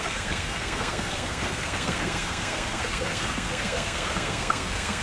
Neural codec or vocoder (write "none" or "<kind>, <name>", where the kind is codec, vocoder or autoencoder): codec, SNAC